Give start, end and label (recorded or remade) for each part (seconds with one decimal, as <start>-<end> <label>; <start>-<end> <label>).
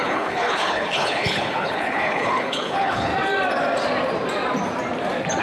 0.0-3.1 remade; 3.1-5.4 recorded